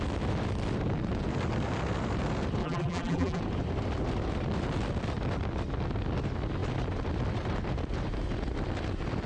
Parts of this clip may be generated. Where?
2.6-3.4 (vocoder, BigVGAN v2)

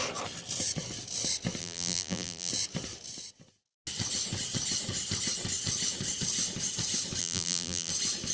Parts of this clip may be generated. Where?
1.6-2.5 (vocoder, BigVGAN v2); 7.2-7.9

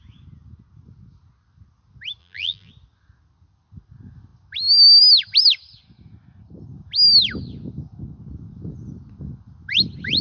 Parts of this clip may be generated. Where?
2.2-2.7 (vocoder, BigVGAN v2)